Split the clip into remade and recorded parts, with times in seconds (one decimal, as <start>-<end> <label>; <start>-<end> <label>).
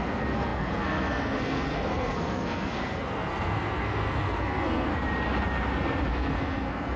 0.0-4.9 remade; 4.9-6.1 recorded; 6.1-7.0 remade